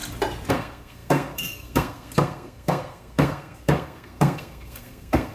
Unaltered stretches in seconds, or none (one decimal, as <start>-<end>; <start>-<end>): 0.0-0.5